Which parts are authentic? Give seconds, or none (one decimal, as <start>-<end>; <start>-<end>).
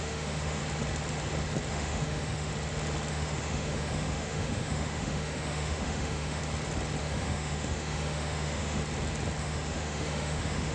0.6-1.7; 2.5-3.1; 6.4-7.0; 8.8-9.4